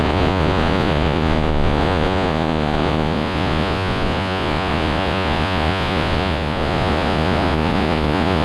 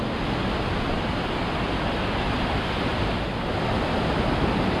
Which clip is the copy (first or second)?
first